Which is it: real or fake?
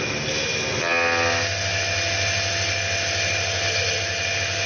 real